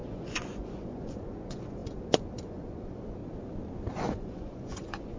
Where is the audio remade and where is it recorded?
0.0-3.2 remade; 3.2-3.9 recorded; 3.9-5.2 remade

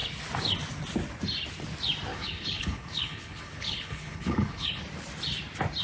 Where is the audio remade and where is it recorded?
0.0-2.1 recorded; 2.1-4.8 remade; 4.8-5.8 recorded

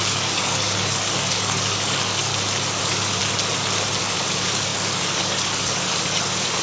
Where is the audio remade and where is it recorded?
0.0-2.3 remade; 2.3-2.8 recorded; 2.8-3.2 remade; 3.2-4.0 recorded; 4.0-6.6 remade

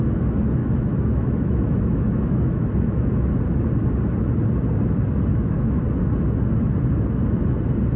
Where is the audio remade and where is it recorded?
0.0-0.6 recorded; 0.6-3.3 remade; 3.3-5.3 recorded; 5.3-5.8 remade; 5.8-8.0 recorded

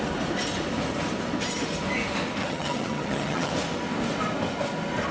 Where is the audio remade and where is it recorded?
0.0-2.4 recorded; 2.4-3.5 remade; 3.5-5.1 recorded

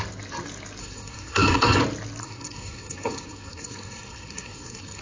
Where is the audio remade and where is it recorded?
0.0-0.8 recorded; 0.8-1.8 remade; 1.8-2.2 recorded; 2.2-5.0 remade